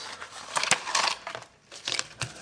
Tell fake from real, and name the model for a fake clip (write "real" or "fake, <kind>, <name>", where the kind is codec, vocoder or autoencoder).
real